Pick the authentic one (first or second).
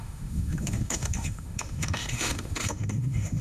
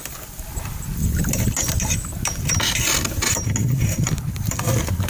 second